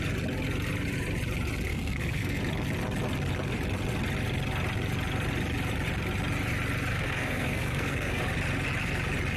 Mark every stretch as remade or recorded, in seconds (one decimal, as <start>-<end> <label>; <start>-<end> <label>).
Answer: 0.0-1.7 recorded; 1.7-2.4 remade; 2.4-6.9 recorded; 6.9-8.2 remade; 8.2-9.4 recorded